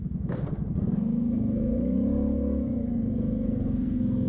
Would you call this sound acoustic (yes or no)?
no